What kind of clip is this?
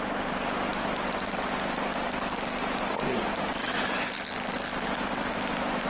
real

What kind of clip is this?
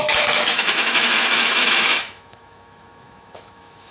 fake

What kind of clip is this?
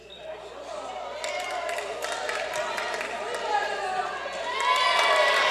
real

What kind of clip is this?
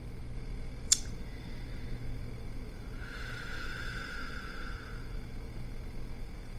fake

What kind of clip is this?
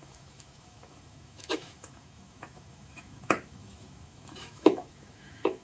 fake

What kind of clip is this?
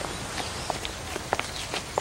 real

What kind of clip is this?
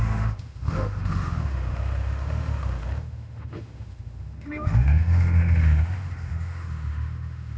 fake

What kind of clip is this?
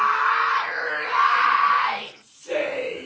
real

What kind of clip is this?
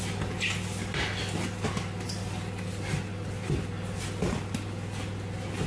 real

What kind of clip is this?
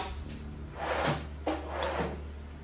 real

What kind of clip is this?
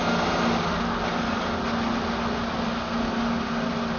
real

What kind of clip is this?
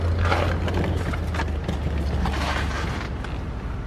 real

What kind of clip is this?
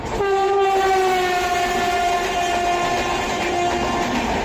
real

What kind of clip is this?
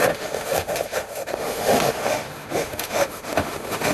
fake